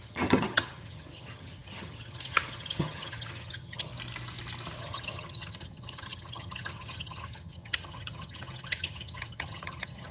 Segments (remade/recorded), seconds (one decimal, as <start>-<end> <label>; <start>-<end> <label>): 0.0-3.9 remade; 3.9-4.8 recorded; 4.8-10.1 remade